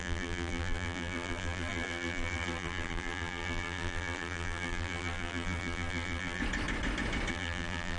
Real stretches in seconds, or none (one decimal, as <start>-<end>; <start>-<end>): 6.4-7.3